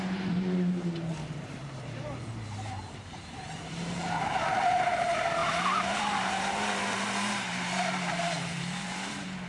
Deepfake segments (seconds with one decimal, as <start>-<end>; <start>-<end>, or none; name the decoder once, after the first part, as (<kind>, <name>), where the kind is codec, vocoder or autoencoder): 0.0-9.5 (vocoder, BigVGAN v2)